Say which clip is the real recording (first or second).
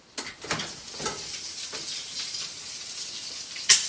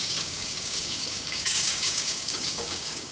first